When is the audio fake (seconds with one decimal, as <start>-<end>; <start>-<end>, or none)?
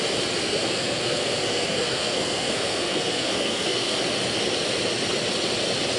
0.4-4.0